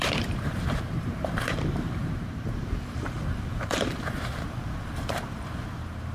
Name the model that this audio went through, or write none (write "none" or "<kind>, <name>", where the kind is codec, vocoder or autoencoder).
vocoder, BigVGAN v2